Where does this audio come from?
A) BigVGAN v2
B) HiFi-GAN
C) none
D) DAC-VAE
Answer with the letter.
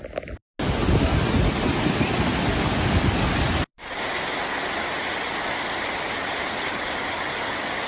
C